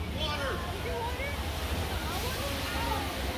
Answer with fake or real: real